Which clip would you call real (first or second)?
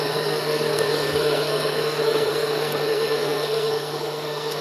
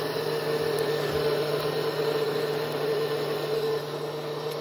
second